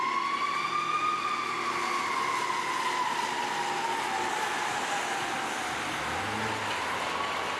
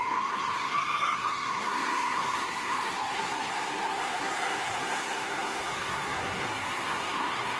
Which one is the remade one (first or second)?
second